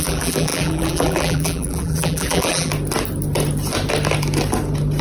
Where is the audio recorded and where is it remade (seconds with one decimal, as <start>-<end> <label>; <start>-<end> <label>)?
0.0-2.7 remade; 2.7-5.0 recorded